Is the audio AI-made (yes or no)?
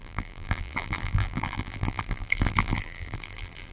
yes